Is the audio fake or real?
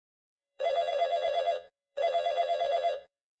fake